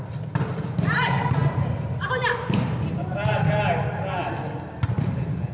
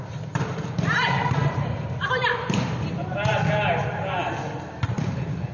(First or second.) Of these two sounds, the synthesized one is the second